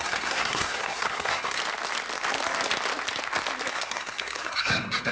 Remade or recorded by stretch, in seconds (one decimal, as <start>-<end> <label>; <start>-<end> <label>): 0.0-1.6 remade; 1.6-3.7 recorded; 3.7-5.1 remade